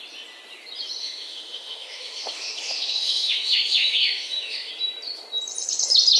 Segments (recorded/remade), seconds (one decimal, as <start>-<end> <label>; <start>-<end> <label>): 0.0-1.0 recorded; 1.0-4.7 remade; 4.7-6.2 recorded